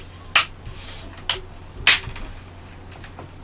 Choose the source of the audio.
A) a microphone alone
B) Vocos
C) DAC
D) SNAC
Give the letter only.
A